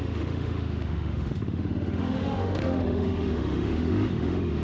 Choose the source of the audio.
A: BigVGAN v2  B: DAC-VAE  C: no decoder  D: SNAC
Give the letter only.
B